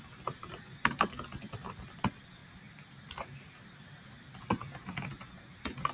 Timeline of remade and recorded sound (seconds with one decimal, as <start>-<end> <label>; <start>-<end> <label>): 0.0-5.9 recorded